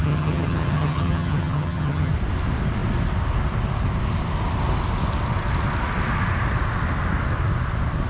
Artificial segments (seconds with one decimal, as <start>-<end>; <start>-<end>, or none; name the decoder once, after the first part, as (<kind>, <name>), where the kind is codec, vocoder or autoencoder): 0.0-2.1 (vocoder, HiFi-GAN)